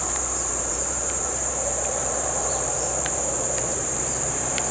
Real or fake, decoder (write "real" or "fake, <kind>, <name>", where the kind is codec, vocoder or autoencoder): fake, vocoder, BigVGAN v2